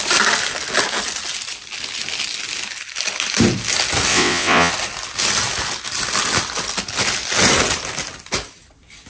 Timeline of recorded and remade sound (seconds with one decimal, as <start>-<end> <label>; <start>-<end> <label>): 0.0-4.1 recorded; 4.1-4.7 remade; 4.7-9.1 recorded